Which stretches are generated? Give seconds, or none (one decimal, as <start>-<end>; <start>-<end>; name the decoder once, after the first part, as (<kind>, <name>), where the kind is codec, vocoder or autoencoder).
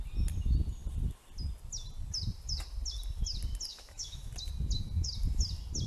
3.7-4.3 (autoencoder, DAC-VAE)